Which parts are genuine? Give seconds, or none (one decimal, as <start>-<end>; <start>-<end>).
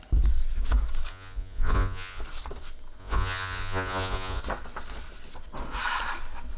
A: 0.0-1.1; 2.2-3.0; 4.4-6.6